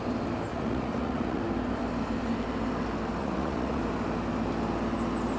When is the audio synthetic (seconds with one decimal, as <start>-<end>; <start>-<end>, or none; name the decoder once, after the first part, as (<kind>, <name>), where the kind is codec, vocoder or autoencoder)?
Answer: 0.5-1.4 (vocoder, Vocos); 3.2-3.8